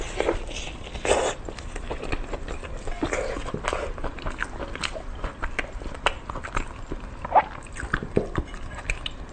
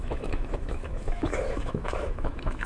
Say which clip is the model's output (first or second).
second